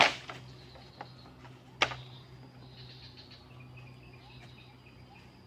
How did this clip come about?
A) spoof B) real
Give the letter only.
B